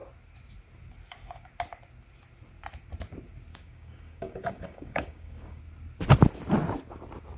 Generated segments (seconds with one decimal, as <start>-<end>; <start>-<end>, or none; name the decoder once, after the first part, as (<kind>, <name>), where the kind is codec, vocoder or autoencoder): 3.5-5.6 (codec, DAC)